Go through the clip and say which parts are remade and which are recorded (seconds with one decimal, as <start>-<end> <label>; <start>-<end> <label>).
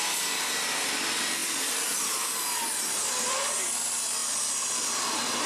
0.0-5.5 recorded